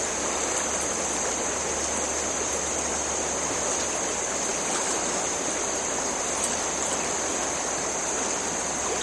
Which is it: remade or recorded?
recorded